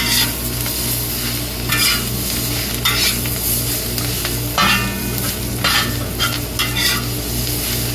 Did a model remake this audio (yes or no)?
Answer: no